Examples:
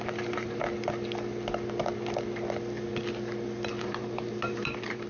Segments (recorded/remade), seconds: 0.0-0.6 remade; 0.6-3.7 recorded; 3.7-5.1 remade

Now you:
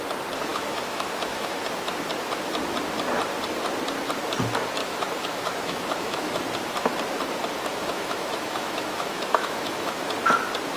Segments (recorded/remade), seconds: 0.0-0.5 recorded; 0.5-1.6 remade; 1.6-4.8 recorded; 4.8-6.4 remade; 6.4-7.7 recorded; 7.7-10.1 remade; 10.1-10.8 recorded

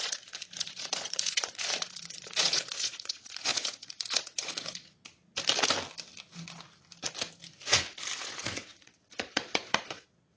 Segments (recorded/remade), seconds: 0.0-5.2 remade; 5.2-8.2 recorded; 8.2-10.4 remade

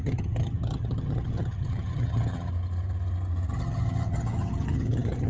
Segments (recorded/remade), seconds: 0.0-2.5 remade; 2.5-3.5 recorded; 3.5-5.3 remade

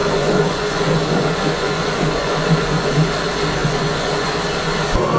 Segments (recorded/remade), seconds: 0.0-3.1 remade; 3.1-3.6 recorded; 3.6-4.3 remade; 4.3-5.2 recorded

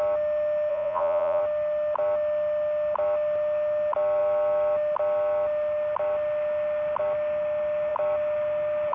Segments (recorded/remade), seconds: 0.0-0.7 recorded; 0.7-1.4 remade; 1.4-8.9 recorded

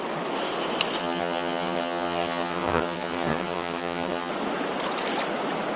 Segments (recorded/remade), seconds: 0.0-1.0 recorded; 1.0-4.3 remade; 4.3-5.8 recorded